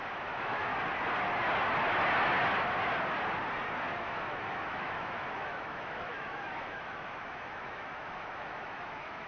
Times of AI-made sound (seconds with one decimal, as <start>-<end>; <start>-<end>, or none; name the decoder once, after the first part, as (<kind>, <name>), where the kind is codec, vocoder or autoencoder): 0.0-0.7 (autoencoder, DAC-VAE); 3.9-9.3